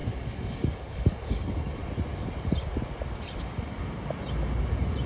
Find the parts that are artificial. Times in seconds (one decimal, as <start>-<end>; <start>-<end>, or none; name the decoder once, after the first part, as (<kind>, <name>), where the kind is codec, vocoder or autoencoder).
0.0-1.8 (codec, DAC)